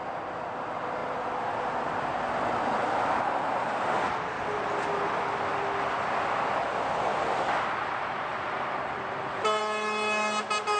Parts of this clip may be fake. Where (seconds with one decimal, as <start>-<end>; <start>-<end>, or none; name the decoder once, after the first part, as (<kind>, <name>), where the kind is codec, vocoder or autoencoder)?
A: 8.3-9.6 (vocoder, BigVGAN v2)